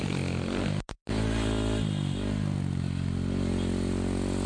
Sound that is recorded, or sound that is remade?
recorded